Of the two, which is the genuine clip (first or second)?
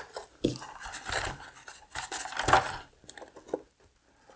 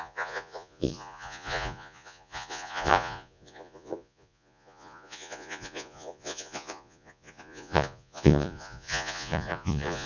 first